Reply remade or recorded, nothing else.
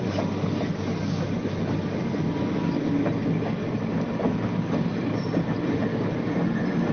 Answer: recorded